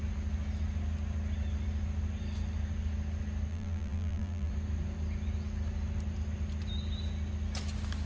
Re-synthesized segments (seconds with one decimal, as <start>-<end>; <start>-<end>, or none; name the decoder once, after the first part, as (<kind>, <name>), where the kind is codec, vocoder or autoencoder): 3.5-4.5 (vocoder, BigVGAN v2)